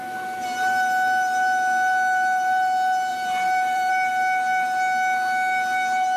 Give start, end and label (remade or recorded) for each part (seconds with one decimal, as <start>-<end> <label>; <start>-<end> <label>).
0.0-3.1 recorded; 3.1-3.9 remade; 3.9-6.2 recorded